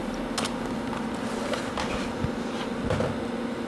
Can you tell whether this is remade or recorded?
recorded